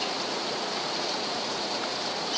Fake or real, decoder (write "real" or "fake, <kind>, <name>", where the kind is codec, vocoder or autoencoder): fake, vocoder, Vocos